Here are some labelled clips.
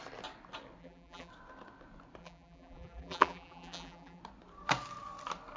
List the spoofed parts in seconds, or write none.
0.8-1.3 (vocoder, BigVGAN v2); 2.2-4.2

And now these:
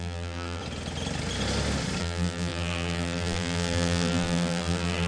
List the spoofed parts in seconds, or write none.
0.0-0.6 (vocoder, BigVGAN v2); 2.0-5.1

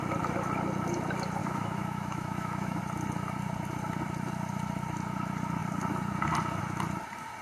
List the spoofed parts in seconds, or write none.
1.4-2.8 (autoencoder, DAC-VAE)

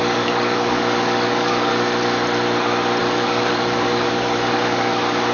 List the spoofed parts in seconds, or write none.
0.0-1.7 (codec, DAC); 3.0-5.3